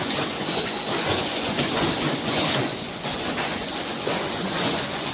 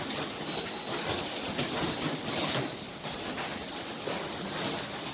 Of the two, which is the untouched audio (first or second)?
second